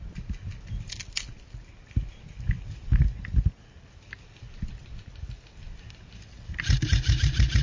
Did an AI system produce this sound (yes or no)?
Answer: no